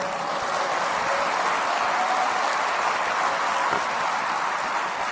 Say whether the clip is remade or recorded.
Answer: recorded